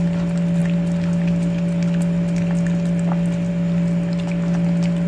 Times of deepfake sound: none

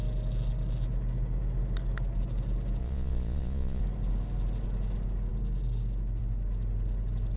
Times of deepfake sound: 2.8-3.8

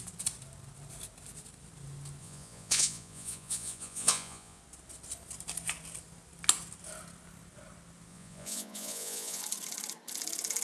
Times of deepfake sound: 2.2-4.6; 8.1-9.4